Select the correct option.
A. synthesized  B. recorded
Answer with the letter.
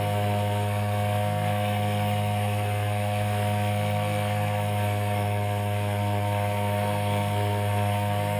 A